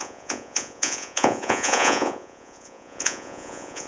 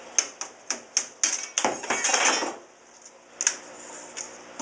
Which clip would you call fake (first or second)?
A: first